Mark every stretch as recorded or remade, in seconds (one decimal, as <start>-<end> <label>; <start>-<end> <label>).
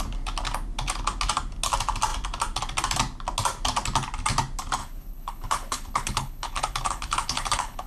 0.0-4.8 recorded; 4.8-7.9 remade